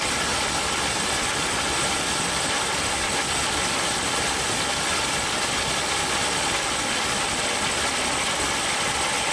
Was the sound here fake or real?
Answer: fake